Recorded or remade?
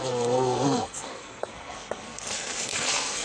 remade